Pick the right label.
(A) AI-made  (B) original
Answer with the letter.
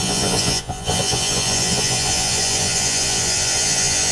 A